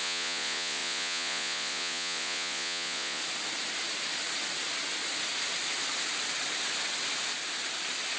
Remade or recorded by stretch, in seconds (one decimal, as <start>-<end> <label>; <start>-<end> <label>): 0.0-3.2 remade; 3.2-8.2 recorded